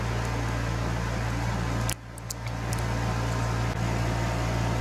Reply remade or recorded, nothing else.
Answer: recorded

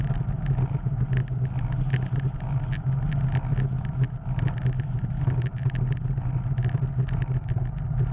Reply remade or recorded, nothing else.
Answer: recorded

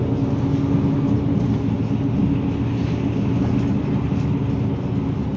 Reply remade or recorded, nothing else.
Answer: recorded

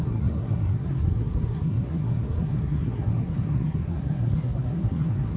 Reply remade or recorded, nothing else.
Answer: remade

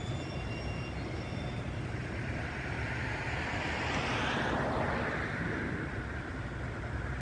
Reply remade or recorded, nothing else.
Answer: recorded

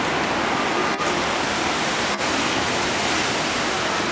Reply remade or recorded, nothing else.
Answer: recorded